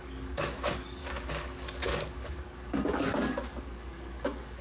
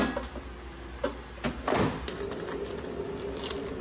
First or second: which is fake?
first